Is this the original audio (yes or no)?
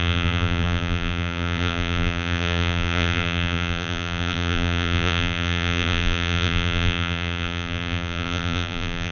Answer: no